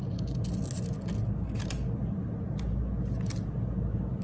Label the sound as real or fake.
real